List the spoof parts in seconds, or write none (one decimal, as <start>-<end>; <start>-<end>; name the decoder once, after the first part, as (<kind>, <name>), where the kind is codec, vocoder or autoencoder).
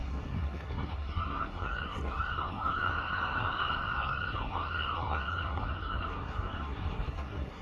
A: 0.0-7.6 (codec, SNAC)